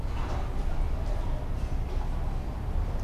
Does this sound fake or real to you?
real